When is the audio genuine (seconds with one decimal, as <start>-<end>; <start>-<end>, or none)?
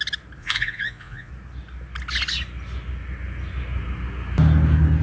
0.0-0.4; 1.3-5.0